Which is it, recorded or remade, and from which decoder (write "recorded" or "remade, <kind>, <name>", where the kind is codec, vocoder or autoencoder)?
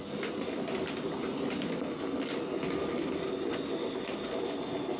recorded